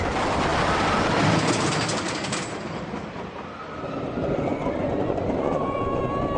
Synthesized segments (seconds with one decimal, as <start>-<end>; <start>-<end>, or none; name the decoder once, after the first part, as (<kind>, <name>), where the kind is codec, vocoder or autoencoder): 4.5-6.0 (vocoder, Vocos)